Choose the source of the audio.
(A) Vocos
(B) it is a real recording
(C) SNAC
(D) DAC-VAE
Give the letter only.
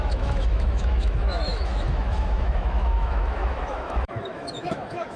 D